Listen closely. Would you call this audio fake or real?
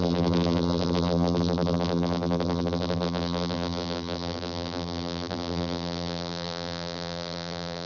fake